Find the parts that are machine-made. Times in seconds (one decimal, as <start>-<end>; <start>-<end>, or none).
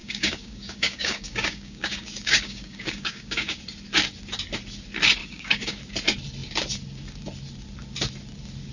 0.0-3.6; 5.2-5.8